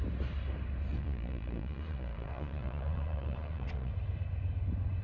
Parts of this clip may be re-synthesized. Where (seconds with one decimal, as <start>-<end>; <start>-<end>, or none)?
0.9-3.9